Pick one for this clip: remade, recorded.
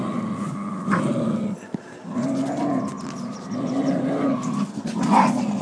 recorded